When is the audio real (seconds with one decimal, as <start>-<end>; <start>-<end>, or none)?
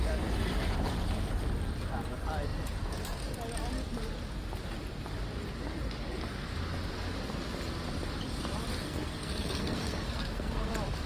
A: 0.0-8.8; 10.7-11.1